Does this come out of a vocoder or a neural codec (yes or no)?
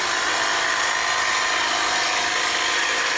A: no